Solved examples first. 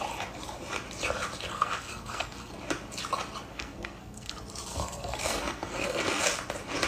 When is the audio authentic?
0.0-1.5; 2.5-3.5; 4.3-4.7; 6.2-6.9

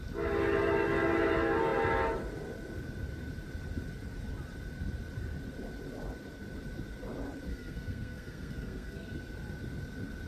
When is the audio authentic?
0.0-7.5; 9.2-10.3

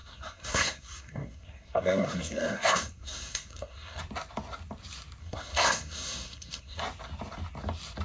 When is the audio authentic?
4.0-5.2; 6.8-8.0

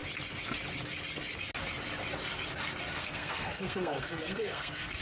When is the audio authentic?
0.0-3.0